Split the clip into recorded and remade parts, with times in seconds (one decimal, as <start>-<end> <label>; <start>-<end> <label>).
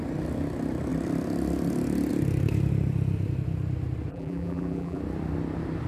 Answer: 0.0-4.1 recorded; 4.1-5.0 remade; 5.0-5.9 recorded